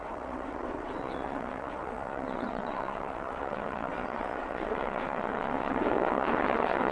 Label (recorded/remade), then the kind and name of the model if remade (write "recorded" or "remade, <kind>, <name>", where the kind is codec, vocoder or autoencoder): remade, vocoder, WaveNeXt